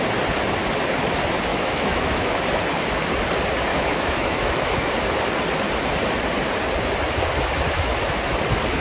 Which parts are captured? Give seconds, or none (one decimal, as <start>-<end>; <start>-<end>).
0.0-1.5; 2.4-3.7; 4.9-8.8